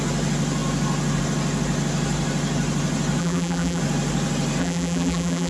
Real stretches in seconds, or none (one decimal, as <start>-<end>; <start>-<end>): 0.0-3.2; 3.8-4.6